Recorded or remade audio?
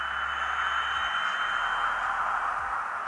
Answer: recorded